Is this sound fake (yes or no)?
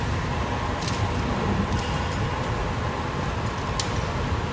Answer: no